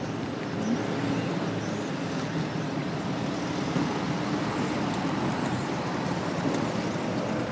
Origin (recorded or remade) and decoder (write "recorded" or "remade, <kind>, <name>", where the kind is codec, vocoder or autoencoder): recorded